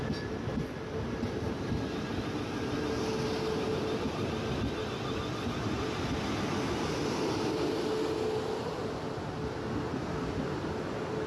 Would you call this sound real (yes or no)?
yes